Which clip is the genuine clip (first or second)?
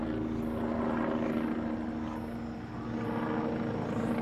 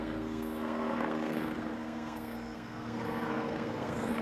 first